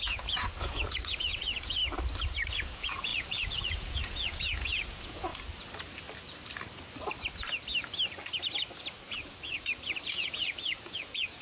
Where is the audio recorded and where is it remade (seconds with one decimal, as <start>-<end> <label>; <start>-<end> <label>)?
0.0-1.8 remade; 1.8-2.5 recorded; 2.5-5.3 remade; 5.3-10.1 recorded; 10.1-11.4 remade